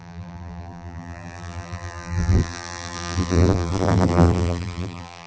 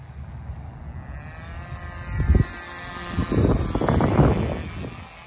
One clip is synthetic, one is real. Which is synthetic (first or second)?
first